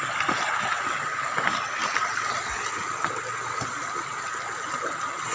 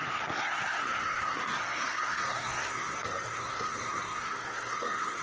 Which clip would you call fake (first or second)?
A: second